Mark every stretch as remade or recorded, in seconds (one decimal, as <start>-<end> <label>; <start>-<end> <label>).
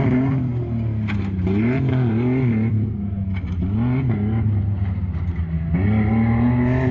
0.0-6.9 recorded